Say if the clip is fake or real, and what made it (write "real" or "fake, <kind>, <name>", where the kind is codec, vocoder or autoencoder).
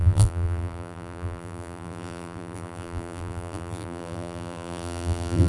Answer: fake, vocoder, BigVGAN v2